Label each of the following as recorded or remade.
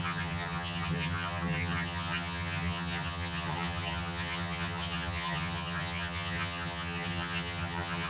remade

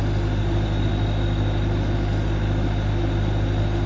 recorded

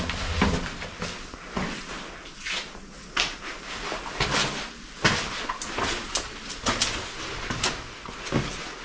recorded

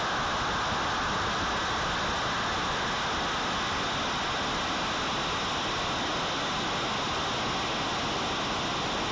recorded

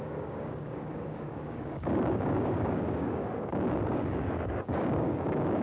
remade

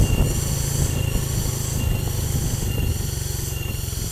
recorded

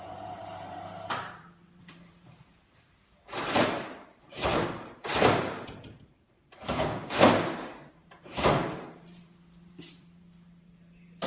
remade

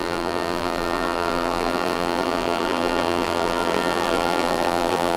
remade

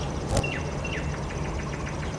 recorded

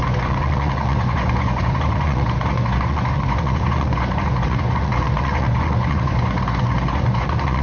remade